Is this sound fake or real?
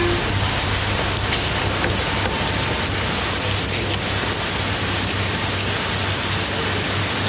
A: real